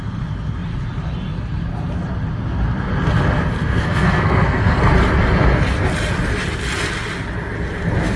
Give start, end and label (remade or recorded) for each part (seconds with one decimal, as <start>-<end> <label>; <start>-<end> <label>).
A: 0.0-3.6 recorded; 3.6-4.8 remade; 4.8-8.2 recorded